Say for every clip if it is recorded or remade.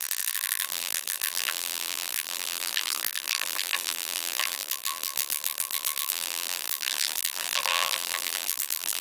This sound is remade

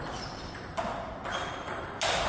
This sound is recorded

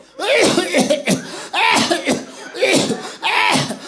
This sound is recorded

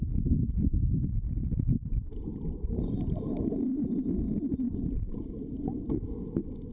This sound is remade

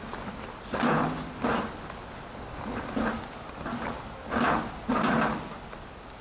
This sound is recorded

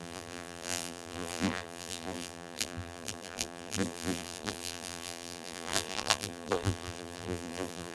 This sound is remade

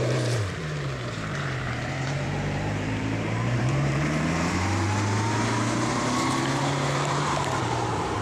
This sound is remade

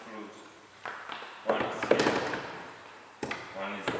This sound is remade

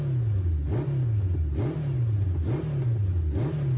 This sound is recorded